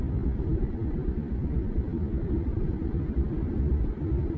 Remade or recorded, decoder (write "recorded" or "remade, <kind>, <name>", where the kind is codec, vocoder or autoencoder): recorded